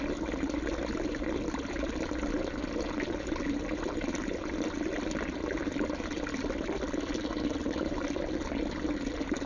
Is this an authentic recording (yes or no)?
yes